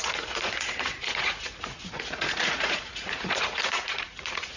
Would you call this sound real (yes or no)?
no